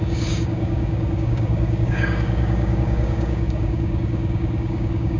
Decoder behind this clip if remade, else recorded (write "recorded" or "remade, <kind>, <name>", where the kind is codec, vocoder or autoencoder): remade, codec, DAC